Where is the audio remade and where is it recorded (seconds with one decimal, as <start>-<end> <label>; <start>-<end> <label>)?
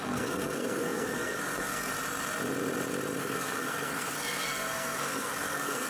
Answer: 0.0-1.9 remade; 1.9-3.2 recorded; 3.2-5.9 remade